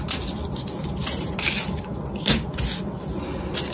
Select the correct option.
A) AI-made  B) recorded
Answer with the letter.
B